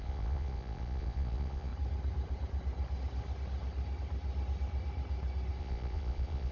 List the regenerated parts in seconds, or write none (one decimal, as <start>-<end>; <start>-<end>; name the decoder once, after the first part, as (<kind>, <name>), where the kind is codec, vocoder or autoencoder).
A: 0.0-1.7 (vocoder, Vocos); 5.6-6.5